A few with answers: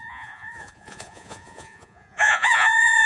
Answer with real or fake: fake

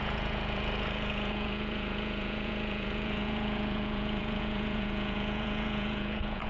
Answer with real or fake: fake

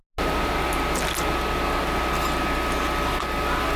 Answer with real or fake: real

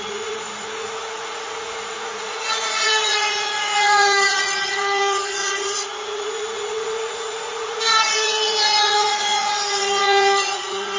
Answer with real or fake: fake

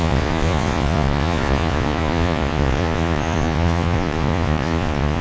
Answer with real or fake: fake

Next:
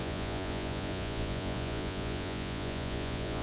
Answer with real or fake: fake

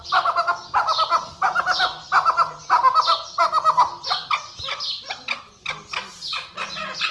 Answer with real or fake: real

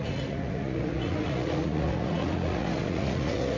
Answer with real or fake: fake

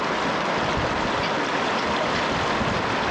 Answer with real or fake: real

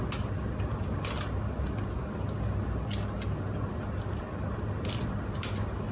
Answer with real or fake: real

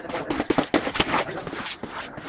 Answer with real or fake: real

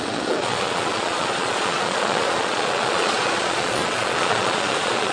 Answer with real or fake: fake